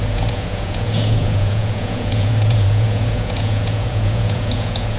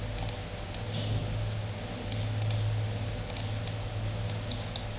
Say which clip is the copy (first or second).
first